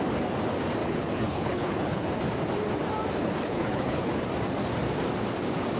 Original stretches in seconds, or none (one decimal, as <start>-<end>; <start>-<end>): 0.0-0.8; 2.1-3.2; 4.1-5.8